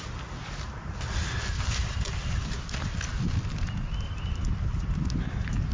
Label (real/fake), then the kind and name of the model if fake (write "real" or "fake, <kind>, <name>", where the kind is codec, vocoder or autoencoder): real